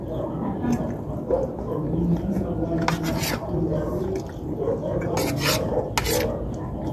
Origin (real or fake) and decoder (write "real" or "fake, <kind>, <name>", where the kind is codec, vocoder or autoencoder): real